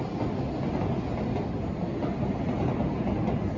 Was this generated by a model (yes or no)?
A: no